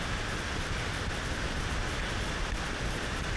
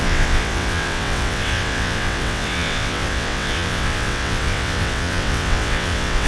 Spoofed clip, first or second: second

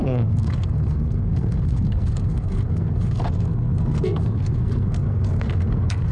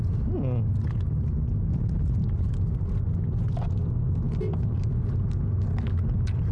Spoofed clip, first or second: first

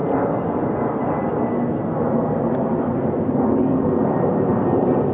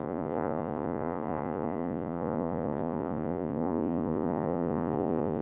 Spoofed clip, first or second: second